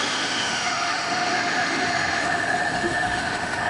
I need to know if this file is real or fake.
fake